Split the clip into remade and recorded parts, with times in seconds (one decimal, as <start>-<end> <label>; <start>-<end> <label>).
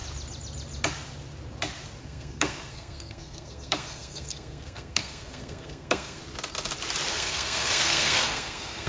0.0-2.0 recorded; 2.0-6.2 remade; 6.2-7.1 recorded; 7.1-8.9 remade